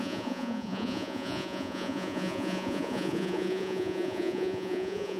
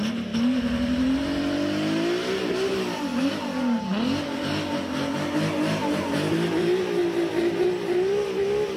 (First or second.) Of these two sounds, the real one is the second